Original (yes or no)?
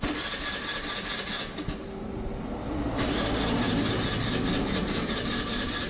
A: yes